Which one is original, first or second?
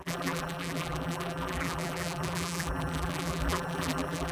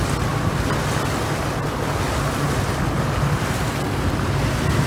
second